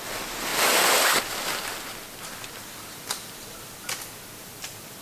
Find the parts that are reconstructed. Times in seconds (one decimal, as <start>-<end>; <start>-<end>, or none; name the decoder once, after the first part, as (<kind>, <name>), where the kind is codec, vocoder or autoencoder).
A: none

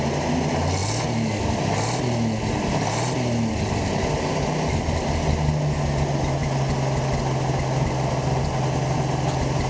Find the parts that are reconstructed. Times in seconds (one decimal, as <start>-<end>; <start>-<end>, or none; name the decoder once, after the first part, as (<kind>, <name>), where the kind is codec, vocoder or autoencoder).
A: none

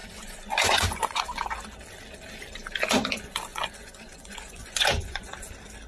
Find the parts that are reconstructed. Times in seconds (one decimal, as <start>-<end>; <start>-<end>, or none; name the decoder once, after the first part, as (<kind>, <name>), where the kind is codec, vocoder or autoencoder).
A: 0.0-1.2 (vocoder, Vocos); 3.5-5.3